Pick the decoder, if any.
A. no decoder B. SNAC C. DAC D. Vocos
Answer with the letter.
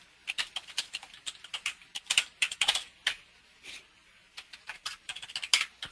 A